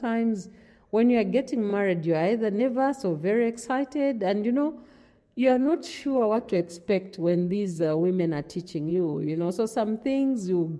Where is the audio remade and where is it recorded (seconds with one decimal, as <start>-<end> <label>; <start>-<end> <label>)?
0.0-4.7 recorded; 4.7-8.2 remade; 8.2-8.9 recorded; 8.9-9.5 remade; 9.5-10.8 recorded